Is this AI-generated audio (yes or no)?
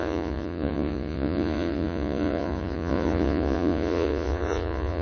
yes